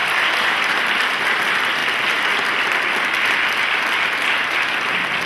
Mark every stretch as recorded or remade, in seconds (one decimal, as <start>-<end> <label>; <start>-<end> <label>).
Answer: 0.0-5.3 recorded